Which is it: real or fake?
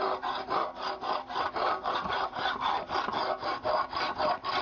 real